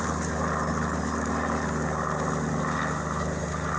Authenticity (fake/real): real